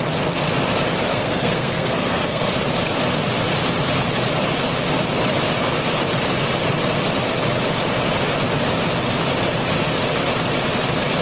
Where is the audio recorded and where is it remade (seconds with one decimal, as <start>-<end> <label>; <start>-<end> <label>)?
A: 0.0-1.1 recorded; 1.1-2.5 remade; 2.5-11.2 recorded